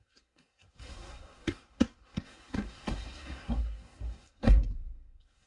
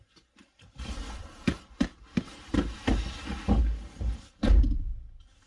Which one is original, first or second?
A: second